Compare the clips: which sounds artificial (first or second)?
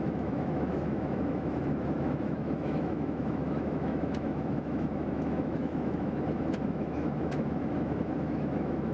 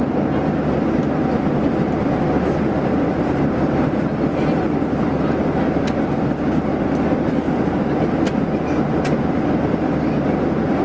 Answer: first